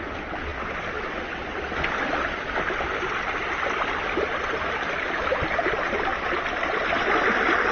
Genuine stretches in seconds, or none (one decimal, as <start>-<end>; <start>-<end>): 0.0-7.7